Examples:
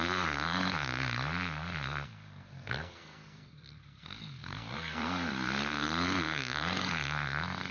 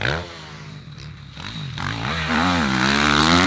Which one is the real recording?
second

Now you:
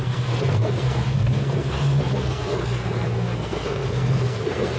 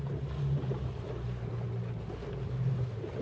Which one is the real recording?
second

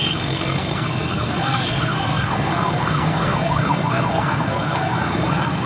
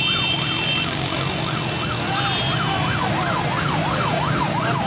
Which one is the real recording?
second